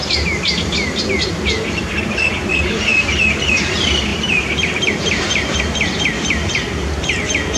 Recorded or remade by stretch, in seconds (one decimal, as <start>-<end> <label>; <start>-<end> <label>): 0.0-4.1 recorded; 4.1-5.6 remade; 5.6-7.6 recorded